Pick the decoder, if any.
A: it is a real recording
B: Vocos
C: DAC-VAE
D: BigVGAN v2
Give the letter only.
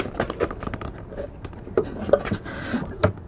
A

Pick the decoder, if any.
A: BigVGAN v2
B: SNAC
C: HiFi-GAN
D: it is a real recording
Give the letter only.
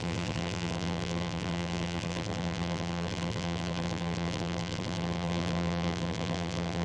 A